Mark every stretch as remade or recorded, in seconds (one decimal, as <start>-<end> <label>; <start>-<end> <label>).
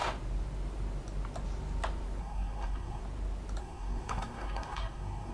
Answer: 0.0-2.2 recorded; 2.2-3.0 remade; 3.0-3.6 recorded; 3.6-5.3 remade